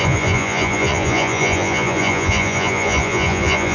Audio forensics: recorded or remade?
remade